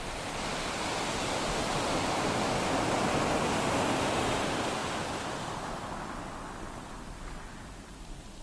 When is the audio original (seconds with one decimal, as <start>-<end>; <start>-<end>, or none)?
0.0-8.4